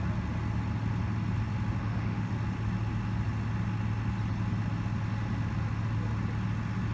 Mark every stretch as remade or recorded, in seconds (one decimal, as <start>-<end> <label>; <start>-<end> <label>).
0.0-1.8 recorded; 1.8-2.3 remade; 2.3-6.9 recorded